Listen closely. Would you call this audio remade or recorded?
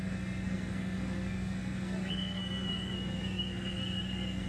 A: remade